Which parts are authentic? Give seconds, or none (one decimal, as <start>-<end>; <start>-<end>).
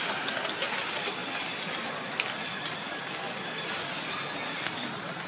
0.0-5.3